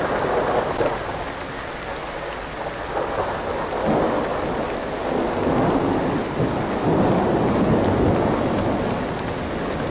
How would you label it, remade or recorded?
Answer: recorded